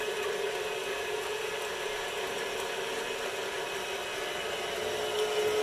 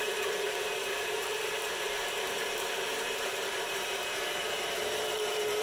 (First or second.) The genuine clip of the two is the first